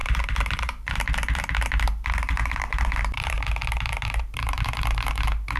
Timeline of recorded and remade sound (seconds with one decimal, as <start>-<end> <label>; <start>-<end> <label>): 0.0-1.0 remade; 1.0-2.3 recorded; 2.3-5.6 remade